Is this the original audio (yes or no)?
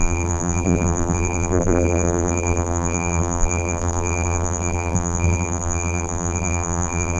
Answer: no